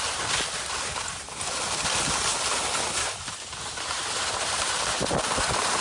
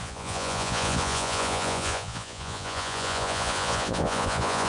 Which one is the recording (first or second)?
first